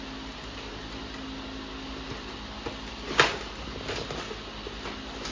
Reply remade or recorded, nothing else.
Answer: recorded